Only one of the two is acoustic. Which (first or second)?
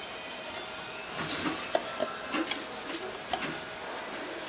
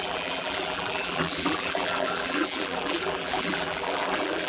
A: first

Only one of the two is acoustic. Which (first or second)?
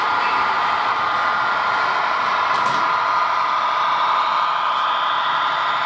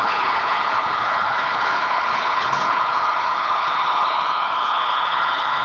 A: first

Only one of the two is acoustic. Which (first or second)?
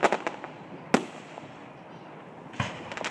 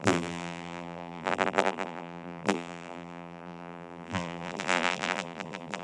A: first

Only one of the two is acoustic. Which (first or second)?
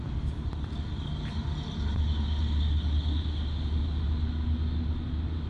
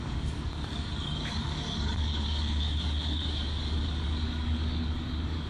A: first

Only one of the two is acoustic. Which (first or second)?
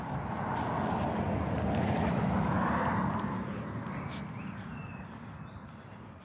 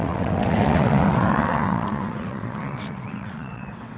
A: first